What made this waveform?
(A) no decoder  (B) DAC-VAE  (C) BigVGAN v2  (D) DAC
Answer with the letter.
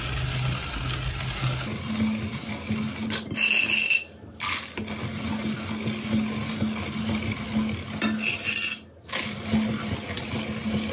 A